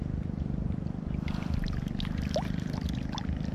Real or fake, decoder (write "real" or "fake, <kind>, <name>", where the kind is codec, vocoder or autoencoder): real